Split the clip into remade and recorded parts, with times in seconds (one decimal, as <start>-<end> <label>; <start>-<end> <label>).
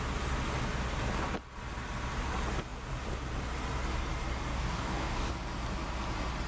0.0-4.5 recorded; 4.5-5.3 remade; 5.3-6.5 recorded